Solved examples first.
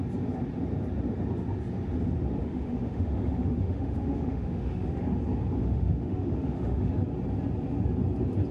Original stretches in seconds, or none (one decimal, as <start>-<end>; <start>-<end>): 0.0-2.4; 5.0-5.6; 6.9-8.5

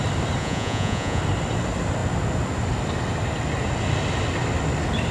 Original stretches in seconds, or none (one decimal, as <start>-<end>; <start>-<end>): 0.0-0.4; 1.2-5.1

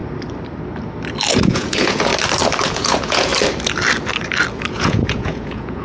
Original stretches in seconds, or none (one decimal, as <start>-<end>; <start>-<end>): 0.0-1.4; 2.1-2.7; 3.3-4.7